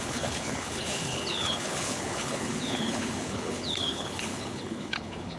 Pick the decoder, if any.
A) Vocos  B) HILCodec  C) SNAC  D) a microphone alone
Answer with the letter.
B